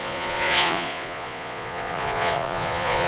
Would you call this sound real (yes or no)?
no